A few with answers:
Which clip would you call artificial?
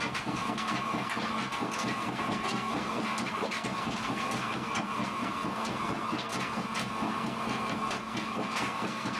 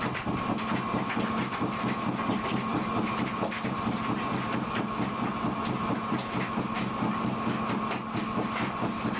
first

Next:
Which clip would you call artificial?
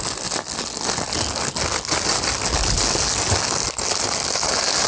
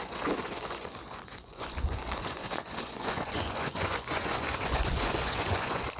second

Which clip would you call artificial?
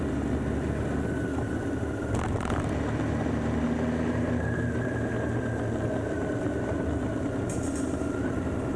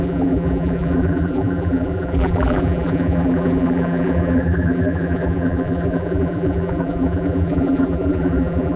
second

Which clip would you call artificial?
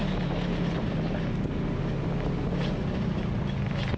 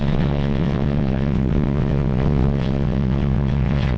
second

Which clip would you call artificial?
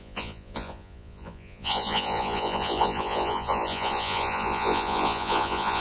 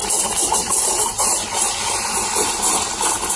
first